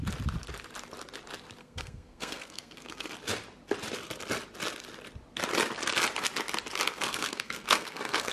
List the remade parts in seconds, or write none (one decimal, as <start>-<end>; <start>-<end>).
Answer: 1.6-3.1; 6.9-8.3